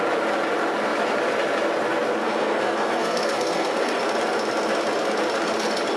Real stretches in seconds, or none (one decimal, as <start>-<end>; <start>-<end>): 0.0-2.2; 4.0-6.0